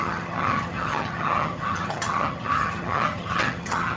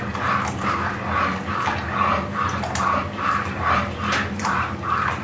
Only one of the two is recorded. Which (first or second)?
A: second